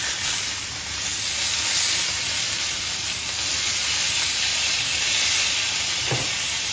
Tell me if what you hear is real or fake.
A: real